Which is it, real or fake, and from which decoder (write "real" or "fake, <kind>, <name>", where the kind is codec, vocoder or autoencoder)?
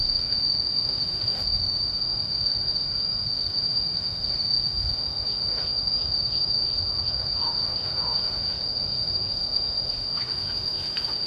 fake, autoencoder, DAC-VAE